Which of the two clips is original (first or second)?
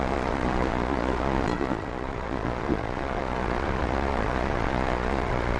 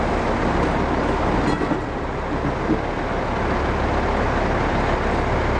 second